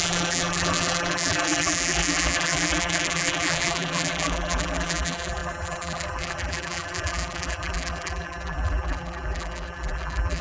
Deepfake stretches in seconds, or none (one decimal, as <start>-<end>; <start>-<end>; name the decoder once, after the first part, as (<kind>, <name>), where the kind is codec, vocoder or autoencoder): 0.0-10.4 (vocoder, BigVGAN v2)